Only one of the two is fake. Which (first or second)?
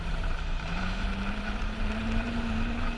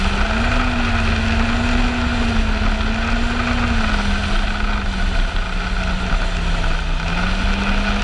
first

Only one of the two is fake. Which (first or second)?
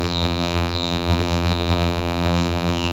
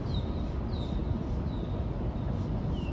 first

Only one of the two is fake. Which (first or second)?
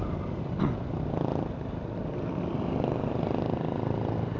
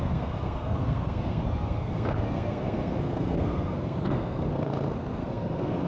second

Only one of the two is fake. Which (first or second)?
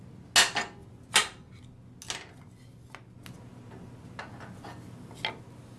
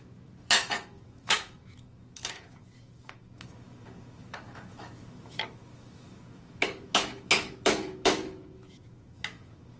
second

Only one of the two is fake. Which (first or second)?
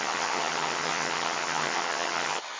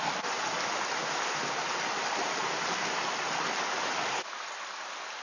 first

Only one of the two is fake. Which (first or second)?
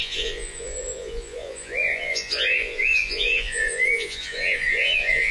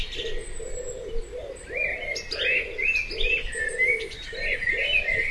first